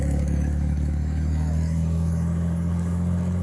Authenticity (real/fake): fake